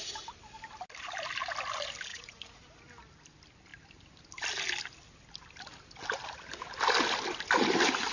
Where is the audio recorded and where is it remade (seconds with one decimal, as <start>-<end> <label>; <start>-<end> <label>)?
0.0-2.1 recorded; 2.1-2.6 remade; 2.6-8.1 recorded